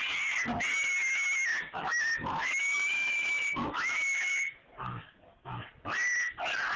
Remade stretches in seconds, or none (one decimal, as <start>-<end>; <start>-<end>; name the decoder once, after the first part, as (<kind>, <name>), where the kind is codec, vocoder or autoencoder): 1.5-5.6 (autoencoder, DAC-VAE)